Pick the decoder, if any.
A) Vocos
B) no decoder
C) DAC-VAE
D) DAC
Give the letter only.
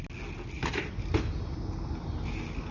B